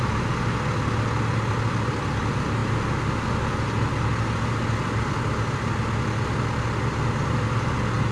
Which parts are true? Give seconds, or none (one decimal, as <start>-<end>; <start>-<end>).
0.0-8.1